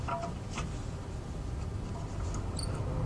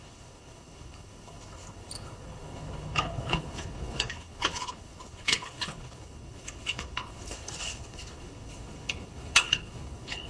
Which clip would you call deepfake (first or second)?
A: second